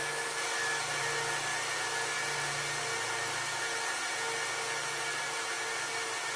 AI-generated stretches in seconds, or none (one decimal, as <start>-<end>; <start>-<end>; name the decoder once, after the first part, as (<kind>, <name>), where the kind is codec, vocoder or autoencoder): 0.0-1.0 (autoencoder, DAC-VAE)